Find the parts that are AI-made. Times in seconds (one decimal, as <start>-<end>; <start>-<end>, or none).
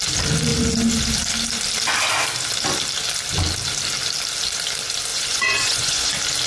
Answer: 5.1-6.1